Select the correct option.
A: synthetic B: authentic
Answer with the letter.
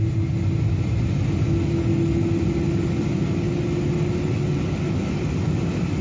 B